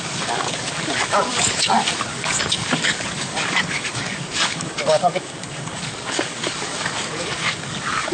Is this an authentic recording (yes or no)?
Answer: no